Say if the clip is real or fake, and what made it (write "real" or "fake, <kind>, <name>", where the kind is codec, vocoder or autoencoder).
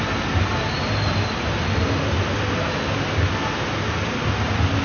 real